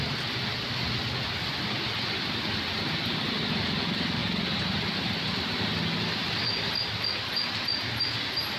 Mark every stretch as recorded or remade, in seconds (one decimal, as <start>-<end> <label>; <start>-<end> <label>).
0.0-8.6 recorded

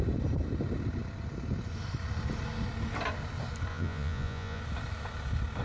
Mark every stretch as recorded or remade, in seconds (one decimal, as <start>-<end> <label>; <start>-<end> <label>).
0.0-3.7 recorded; 3.7-4.6 remade; 4.6-5.6 recorded